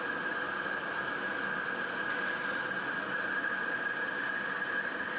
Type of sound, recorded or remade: recorded